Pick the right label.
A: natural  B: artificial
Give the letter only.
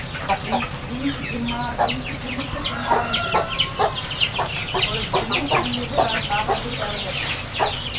A